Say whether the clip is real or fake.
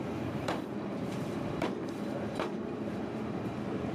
fake